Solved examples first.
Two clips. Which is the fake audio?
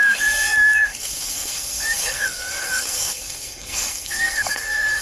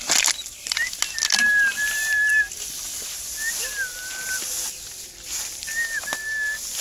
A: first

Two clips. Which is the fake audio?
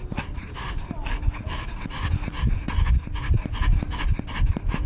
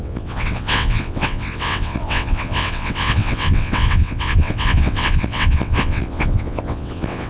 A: second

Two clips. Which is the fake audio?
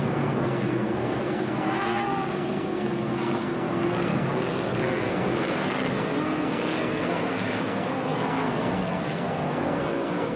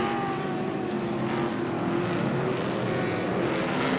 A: first